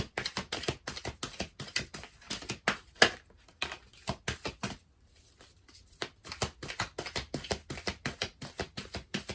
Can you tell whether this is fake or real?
real